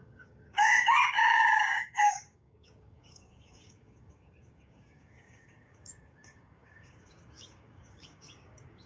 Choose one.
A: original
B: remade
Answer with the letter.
B